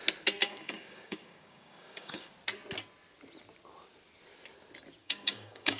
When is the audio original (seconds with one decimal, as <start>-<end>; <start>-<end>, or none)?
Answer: 0.0-0.4; 2.3-5.0